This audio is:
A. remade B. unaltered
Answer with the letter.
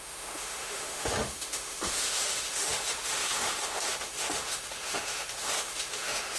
A